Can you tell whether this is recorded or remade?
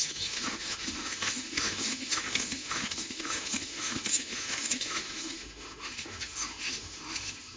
remade